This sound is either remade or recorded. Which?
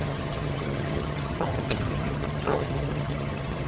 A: remade